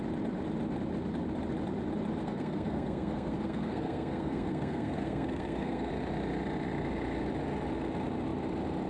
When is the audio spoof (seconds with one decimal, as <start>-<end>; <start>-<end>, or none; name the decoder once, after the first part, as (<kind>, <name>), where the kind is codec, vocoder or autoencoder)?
2.2-5.9 (codec, SNAC)